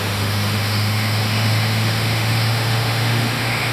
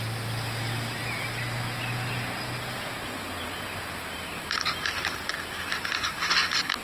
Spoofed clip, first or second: first